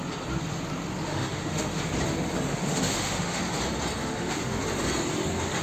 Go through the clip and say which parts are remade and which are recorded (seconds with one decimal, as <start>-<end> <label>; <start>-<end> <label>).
0.0-1.1 recorded; 1.1-1.8 remade; 1.8-2.5 recorded; 2.5-3.4 remade; 3.4-4.0 recorded; 4.0-4.6 remade; 4.6-5.6 recorded